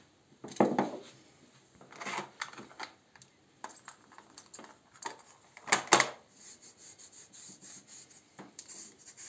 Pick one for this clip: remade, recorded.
recorded